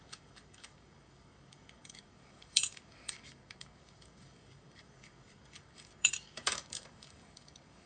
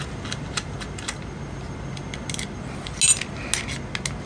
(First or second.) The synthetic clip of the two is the first